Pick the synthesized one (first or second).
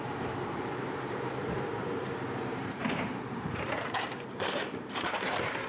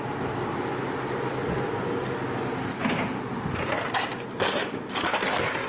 first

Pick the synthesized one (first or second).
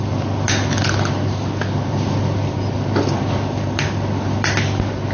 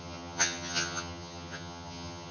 second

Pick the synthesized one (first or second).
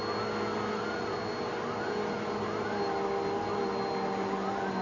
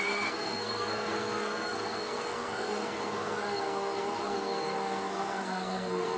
second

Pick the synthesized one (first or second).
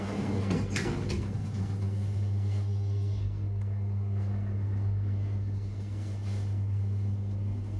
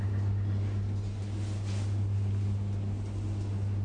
first